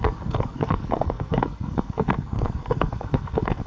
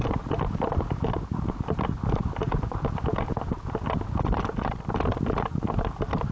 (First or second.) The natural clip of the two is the second